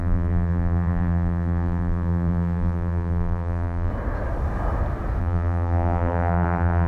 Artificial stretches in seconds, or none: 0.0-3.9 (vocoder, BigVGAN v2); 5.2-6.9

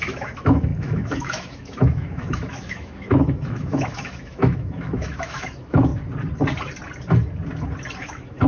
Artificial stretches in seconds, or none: 0.0-5.9 (autoencoder, DAC-VAE); 8.0-8.5

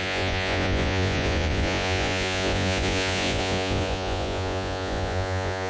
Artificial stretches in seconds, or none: 0.0-5.7 (vocoder, Vocos)

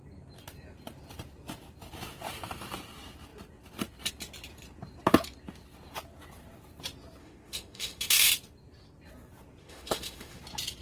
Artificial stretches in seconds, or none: 7.2-8.3 (autoencoder, DAC-VAE); 9.6-10.4